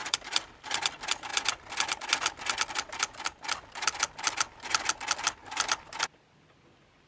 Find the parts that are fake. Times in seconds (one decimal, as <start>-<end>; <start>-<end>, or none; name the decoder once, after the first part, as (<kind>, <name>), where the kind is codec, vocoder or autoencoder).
0.0-0.5 (vocoder, BigVGAN v2); 5.4-6.1